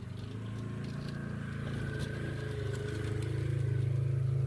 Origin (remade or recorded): recorded